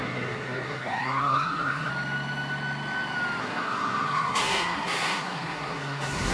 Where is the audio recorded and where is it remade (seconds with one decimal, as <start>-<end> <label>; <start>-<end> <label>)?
0.0-1.9 remade; 1.9-3.4 recorded; 3.4-6.3 remade